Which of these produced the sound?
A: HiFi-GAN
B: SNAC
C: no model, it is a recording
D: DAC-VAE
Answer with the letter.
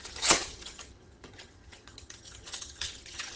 A